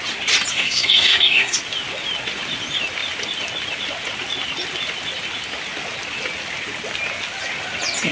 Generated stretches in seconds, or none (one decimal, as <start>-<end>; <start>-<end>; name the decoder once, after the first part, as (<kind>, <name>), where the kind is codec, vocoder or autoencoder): 0.5-1.6 (codec, SNAC)